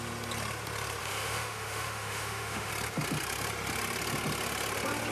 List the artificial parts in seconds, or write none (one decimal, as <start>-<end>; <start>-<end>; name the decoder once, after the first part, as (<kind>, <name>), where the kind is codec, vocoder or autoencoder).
1.0-2.7 (autoencoder, DAC-VAE)